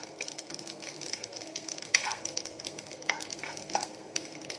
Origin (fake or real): fake